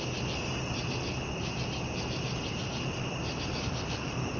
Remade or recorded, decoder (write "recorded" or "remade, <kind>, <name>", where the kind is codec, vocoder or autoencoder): recorded